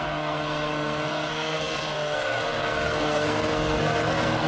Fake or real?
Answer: fake